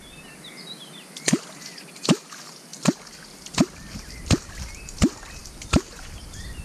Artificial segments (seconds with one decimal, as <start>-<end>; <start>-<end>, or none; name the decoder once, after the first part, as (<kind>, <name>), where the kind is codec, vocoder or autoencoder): 5.4-6.6 (vocoder, BigVGAN v2)